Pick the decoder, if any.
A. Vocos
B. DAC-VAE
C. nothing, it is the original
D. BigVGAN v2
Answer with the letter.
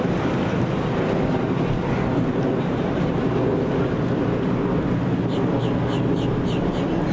C